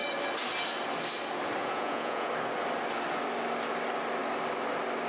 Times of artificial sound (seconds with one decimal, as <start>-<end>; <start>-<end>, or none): 1.6-2.3